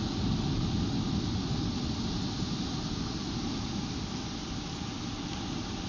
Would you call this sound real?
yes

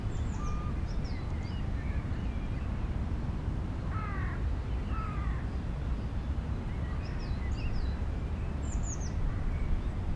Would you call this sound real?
yes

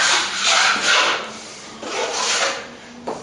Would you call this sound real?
yes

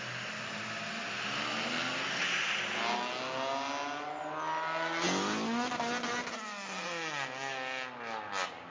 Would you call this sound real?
yes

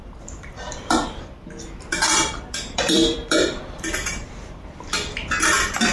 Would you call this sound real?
no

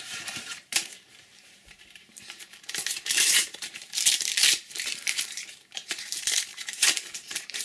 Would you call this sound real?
no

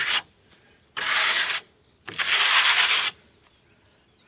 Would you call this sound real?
yes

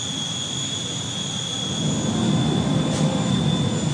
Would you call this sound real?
yes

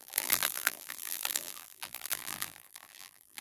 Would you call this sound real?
no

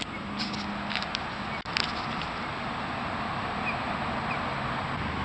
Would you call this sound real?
yes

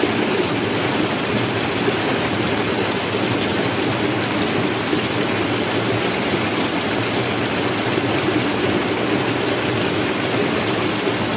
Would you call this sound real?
yes